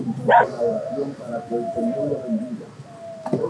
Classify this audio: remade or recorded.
recorded